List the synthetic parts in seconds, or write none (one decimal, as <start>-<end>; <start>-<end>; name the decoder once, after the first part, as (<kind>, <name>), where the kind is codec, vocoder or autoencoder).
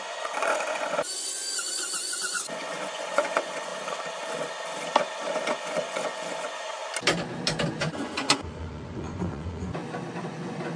0.0-3.7 (vocoder, Vocos); 5.5-6.8; 7.7-9.8; 10.3-10.8